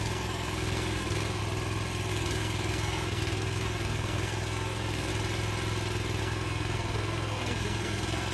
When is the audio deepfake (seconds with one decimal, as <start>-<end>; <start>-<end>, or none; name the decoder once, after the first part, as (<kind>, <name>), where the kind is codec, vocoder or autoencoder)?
0.0-1.4 (codec, SNAC); 2.1-5.1; 6.2-8.3